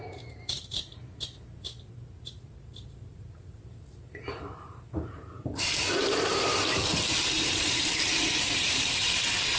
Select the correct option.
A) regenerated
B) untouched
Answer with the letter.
A